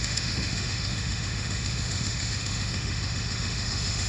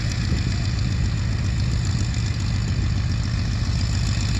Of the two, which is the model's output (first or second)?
first